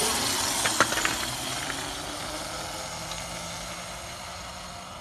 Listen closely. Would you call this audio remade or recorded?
recorded